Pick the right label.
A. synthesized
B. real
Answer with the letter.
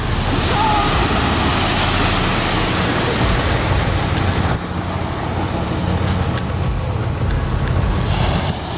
B